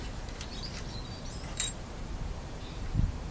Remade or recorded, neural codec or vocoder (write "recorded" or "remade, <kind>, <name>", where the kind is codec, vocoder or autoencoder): remade, vocoder, BigVGAN v2